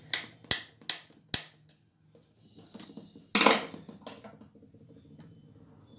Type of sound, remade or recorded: recorded